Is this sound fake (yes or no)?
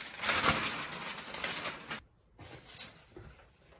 no